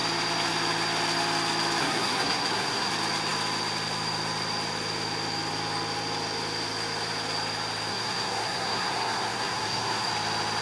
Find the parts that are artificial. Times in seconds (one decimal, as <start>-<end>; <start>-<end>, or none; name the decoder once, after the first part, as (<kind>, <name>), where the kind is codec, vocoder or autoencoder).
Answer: 1.8-2.9 (codec, SNAC); 7.9-10.1